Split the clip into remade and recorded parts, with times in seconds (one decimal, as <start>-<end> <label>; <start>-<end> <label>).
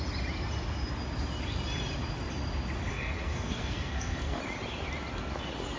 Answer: 0.0-2.9 recorded; 2.9-4.4 remade; 4.4-5.8 recorded